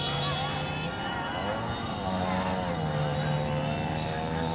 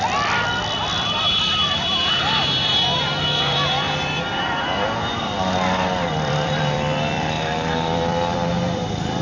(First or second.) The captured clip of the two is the first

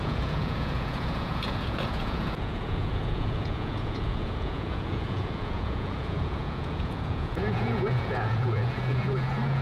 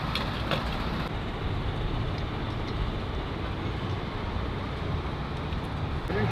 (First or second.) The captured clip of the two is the second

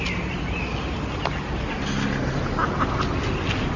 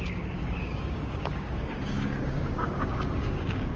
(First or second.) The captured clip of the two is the first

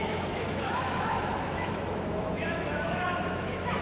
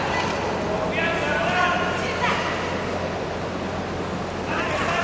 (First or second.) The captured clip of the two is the second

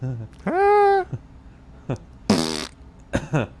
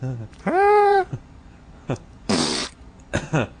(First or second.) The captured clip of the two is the first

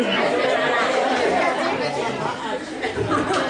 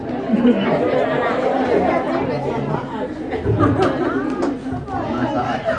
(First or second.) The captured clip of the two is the second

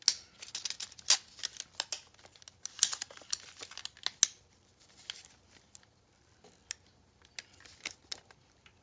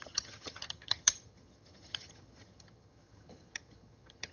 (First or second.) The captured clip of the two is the first